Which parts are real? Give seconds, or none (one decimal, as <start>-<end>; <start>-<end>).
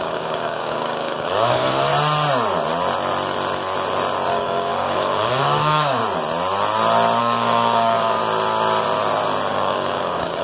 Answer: 1.9-4.3; 6.0-7.2; 8.2-9.5